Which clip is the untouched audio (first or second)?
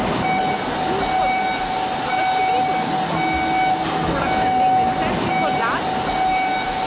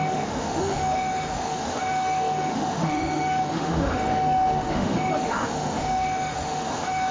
first